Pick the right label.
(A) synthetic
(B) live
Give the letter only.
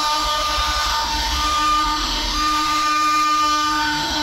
A